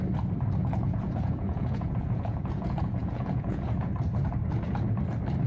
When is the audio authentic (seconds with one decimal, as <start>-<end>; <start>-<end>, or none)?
0.0-0.6; 3.9-5.5